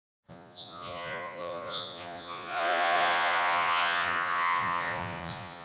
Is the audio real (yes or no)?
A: no